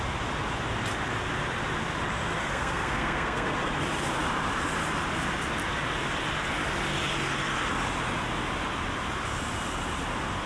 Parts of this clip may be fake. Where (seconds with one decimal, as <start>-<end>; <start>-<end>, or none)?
2.4-3.7